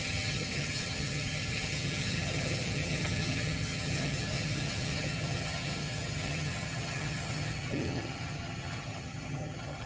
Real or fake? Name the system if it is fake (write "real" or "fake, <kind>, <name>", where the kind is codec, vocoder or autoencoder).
fake, vocoder, HiFi-GAN